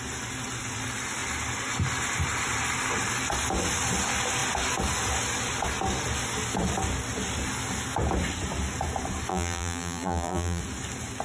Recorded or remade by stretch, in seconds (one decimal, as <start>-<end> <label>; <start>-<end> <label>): 0.0-9.3 recorded; 9.3-10.6 remade; 10.6-11.2 recorded